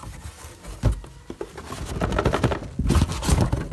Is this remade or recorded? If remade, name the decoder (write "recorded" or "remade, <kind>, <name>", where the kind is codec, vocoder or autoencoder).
recorded